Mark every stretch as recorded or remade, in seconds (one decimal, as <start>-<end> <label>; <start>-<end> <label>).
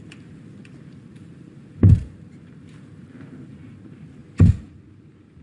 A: 0.0-4.2 remade; 4.2-4.9 recorded; 4.9-5.4 remade